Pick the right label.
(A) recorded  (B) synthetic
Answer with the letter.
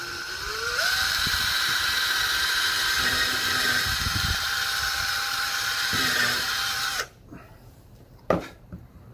B